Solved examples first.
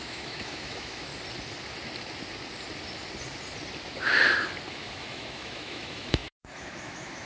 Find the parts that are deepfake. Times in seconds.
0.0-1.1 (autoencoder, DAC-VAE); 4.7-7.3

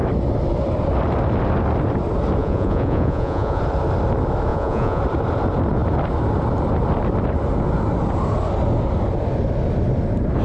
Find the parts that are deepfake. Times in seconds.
2.4-3.6 (vocoder, Vocos); 4.5-5.0

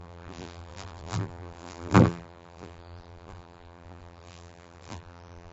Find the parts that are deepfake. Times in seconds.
0.0-5.5 (vocoder, BigVGAN v2)

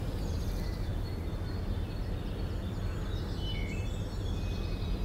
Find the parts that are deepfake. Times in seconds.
none